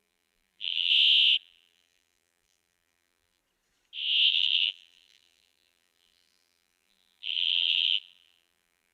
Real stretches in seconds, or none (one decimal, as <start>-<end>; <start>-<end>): 0.9-1.4; 3.4-4.3

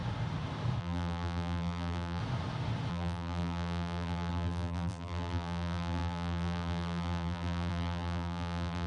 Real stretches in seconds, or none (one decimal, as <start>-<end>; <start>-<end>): 0.0-0.8; 2.2-2.9

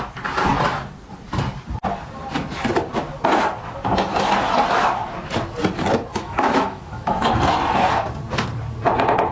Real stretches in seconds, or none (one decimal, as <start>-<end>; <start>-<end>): 0.0-6.1; 7.4-9.3

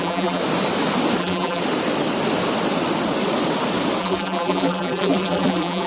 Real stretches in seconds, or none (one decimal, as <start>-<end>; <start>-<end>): 0.4-1.2; 1.6-4.0

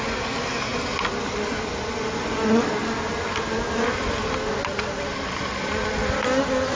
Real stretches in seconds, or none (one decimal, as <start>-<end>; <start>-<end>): 0.0-6.8

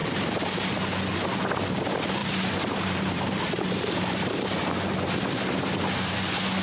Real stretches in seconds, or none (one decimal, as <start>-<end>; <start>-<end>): 0.8-2.2; 5.1-6.6

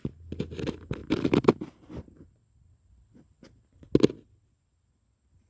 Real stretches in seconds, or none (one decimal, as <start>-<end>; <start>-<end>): 0.0-1.0; 3.3-5.5